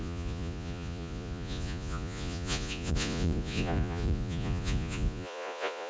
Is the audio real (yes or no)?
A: no